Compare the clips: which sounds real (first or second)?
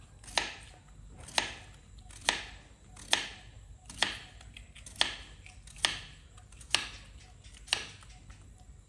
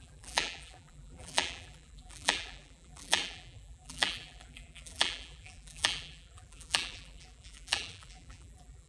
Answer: first